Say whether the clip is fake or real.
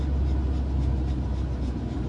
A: real